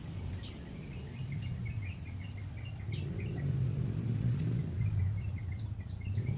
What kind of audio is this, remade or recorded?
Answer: recorded